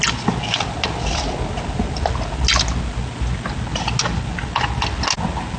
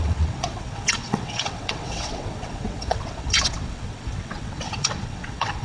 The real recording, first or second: first